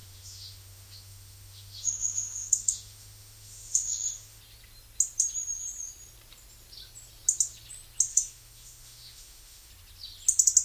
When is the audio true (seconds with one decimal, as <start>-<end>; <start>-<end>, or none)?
4.4-8.1; 9.7-10.6